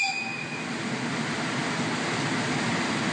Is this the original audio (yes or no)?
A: yes